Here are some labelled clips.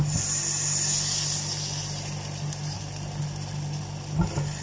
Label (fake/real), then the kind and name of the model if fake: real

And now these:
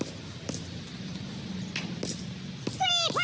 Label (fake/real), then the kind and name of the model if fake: real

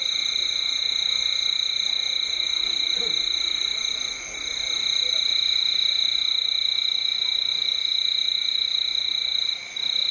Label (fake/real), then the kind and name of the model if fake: real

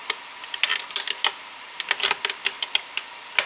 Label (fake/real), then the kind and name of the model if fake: real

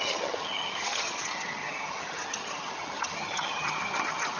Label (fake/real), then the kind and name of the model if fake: fake, vocoder, HiFi-GAN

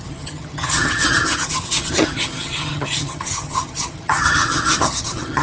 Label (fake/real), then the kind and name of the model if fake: fake, vocoder, HiFi-GAN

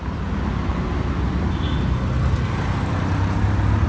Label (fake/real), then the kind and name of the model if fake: real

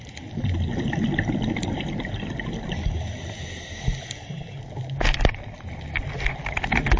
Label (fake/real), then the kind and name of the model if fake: real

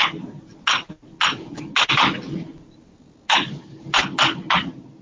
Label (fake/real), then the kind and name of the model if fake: real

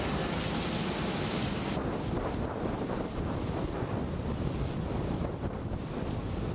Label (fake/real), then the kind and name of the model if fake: real